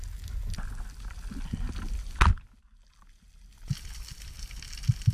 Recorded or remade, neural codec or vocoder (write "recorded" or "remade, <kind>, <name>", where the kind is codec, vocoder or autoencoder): recorded